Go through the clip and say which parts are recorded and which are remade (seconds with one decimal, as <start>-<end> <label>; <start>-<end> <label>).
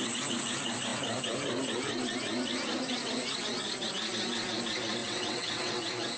0.0-5.0 recorded; 5.0-5.8 remade; 5.8-6.2 recorded